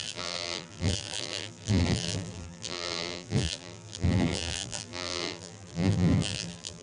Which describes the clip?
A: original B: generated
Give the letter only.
B